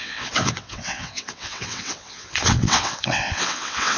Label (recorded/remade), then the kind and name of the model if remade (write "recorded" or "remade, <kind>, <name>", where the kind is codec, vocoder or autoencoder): remade, vocoder, WaveNeXt